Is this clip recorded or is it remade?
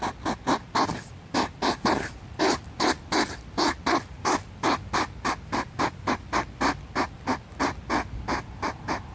recorded